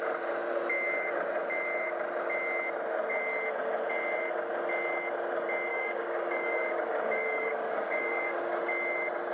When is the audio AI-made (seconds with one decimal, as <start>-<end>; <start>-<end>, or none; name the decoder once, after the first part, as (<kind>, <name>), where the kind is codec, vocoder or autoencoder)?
5.7-8.6 (codec, DAC)